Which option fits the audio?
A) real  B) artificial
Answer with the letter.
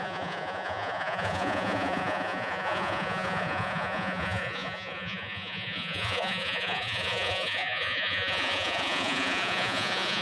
B